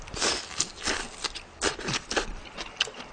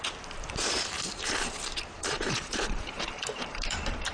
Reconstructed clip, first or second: second